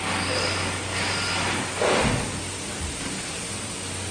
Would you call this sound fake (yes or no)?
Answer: no